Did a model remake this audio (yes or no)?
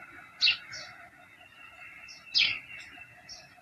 no